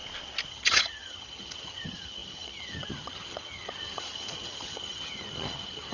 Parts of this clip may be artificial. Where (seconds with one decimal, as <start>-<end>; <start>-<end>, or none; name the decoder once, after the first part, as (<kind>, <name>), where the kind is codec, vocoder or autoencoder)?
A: 0.5-5.9 (vocoder, HiFi-GAN)